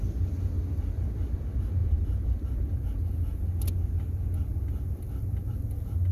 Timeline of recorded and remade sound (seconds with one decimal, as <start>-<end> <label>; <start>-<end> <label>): 0.0-1.8 recorded; 1.8-3.5 remade; 3.5-6.1 recorded